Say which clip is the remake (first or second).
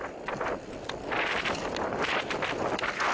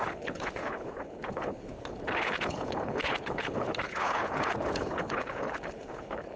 second